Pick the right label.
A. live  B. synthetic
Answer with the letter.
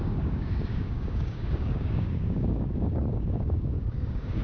B